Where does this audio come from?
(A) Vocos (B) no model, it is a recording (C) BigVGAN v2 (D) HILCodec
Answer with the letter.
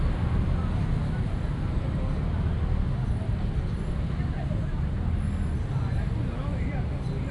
B